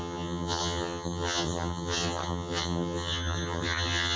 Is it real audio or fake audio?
fake